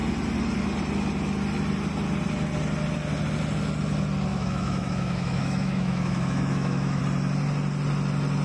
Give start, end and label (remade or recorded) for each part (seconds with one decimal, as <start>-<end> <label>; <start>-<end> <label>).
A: 0.0-4.3 recorded; 4.3-7.0 remade; 7.0-8.4 recorded